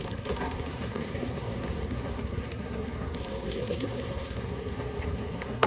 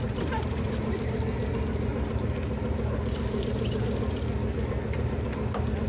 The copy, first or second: first